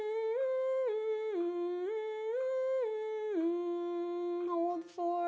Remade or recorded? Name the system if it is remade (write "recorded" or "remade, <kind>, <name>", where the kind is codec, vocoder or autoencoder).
recorded